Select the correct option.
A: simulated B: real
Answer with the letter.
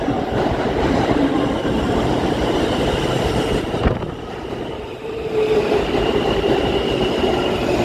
A